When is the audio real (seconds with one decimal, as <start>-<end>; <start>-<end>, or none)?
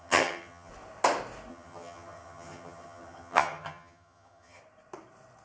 0.7-1.5; 4.6-5.4